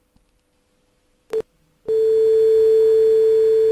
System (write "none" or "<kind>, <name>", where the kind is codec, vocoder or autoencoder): none